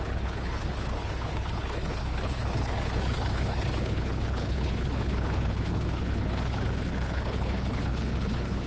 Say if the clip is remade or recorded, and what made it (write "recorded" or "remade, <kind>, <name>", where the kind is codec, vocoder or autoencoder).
remade, codec, HILCodec